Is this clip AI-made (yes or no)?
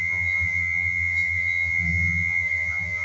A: yes